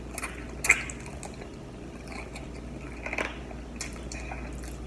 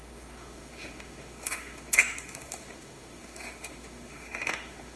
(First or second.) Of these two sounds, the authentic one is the first